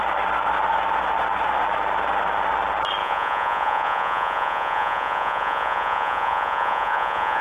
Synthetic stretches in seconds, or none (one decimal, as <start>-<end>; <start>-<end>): 3.0-7.4